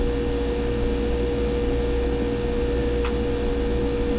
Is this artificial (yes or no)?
no